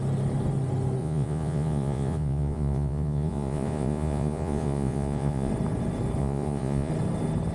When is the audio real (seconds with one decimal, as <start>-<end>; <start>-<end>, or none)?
0.0-1.0; 5.5-6.2; 6.9-7.5